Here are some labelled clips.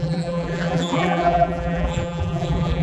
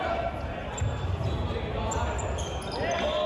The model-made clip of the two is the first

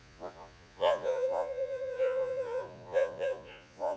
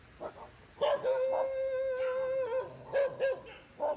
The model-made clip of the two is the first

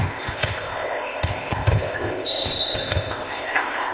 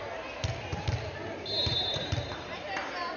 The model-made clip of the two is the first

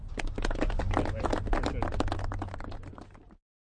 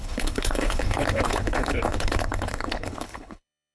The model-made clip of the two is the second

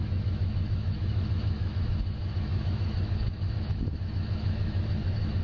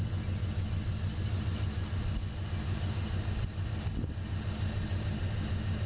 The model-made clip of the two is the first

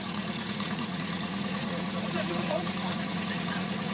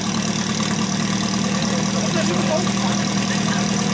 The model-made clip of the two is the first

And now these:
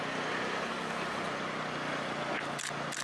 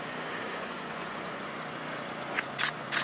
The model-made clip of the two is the second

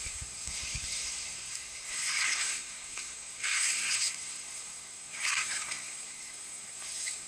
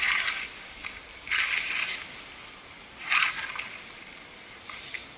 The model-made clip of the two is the first